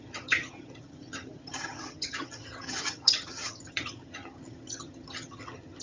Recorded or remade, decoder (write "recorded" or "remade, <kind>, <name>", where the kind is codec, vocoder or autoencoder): remade, vocoder, HiFi-GAN